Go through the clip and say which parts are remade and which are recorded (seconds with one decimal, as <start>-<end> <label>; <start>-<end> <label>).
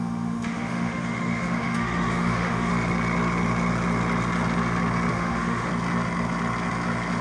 0.0-2.7 remade; 2.7-5.1 recorded; 5.1-5.7 remade; 5.7-7.2 recorded